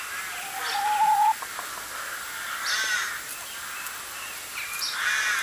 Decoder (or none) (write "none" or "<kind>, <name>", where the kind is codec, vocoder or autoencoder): none